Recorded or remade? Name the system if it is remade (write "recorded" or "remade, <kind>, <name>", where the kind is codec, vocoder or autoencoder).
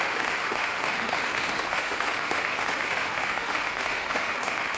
remade, autoencoder, DAC-VAE